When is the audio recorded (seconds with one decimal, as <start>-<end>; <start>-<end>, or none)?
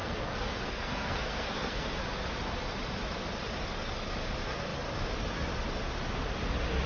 2.0-6.9